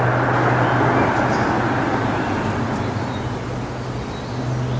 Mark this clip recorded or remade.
recorded